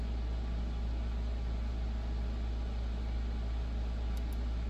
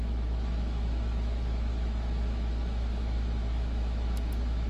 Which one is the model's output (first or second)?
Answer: second